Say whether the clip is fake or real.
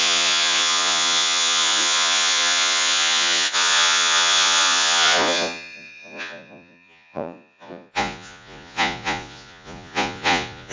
fake